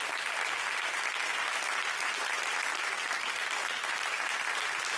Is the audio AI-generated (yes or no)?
no